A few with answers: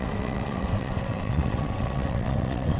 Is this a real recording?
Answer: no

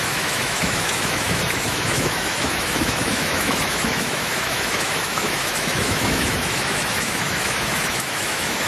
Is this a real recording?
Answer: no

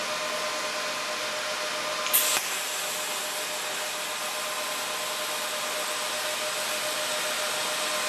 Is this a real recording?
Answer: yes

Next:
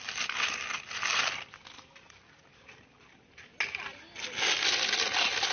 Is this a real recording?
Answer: yes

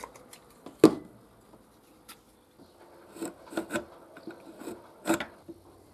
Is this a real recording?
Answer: yes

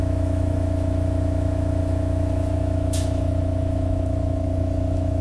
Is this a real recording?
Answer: no